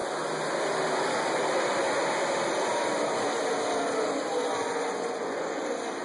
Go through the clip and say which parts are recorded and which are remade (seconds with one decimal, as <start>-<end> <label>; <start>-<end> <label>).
0.0-4.6 recorded; 4.6-5.6 remade; 5.6-6.0 recorded